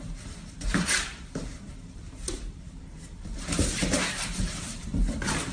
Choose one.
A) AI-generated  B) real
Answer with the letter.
A